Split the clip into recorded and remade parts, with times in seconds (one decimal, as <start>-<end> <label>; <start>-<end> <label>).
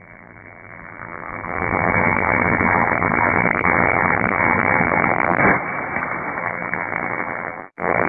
0.0-5.4 remade; 5.4-6.4 recorded; 6.4-8.1 remade